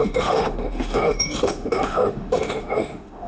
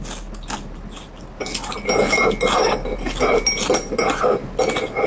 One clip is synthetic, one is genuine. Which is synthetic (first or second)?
first